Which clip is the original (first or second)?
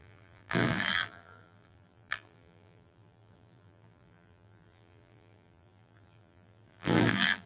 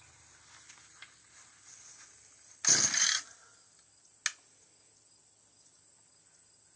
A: second